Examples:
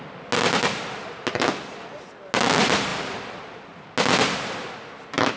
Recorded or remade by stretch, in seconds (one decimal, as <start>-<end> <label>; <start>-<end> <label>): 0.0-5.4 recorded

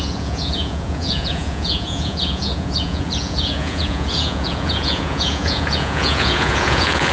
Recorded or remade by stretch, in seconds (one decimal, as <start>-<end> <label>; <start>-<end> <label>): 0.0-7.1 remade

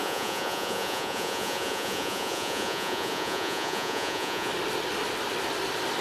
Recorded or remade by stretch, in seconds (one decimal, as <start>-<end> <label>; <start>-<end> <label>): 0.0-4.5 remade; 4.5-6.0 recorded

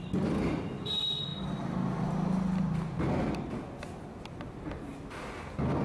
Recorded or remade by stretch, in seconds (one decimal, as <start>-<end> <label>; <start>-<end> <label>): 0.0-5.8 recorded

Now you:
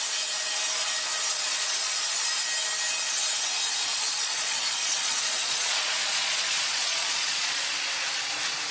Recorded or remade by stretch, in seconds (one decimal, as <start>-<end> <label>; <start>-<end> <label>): 0.0-1.3 recorded; 1.3-2.2 remade; 2.2-3.9 recorded; 3.9-7.7 remade; 7.7-8.7 recorded

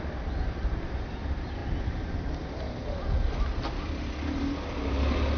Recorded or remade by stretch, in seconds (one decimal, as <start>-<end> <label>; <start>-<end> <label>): 0.0-5.4 recorded